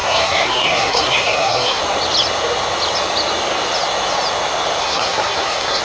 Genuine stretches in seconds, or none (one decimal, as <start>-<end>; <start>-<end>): 1.8-4.8